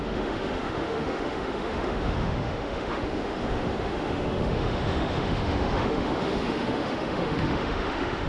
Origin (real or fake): fake